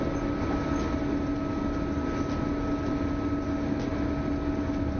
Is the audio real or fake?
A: real